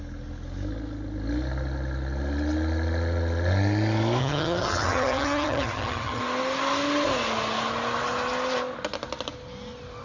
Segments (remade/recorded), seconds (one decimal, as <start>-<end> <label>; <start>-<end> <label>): 0.0-4.2 recorded; 4.2-6.2 remade; 6.2-10.0 recorded